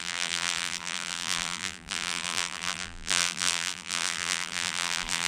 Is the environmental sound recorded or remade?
remade